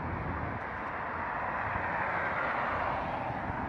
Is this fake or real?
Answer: real